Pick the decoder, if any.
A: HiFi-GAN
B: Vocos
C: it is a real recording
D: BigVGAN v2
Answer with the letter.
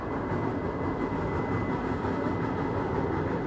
C